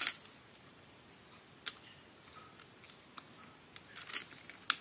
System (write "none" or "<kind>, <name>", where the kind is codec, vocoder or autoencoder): none